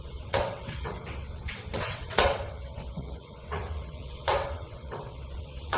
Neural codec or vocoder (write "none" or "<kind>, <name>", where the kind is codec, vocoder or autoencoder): vocoder, WaveNeXt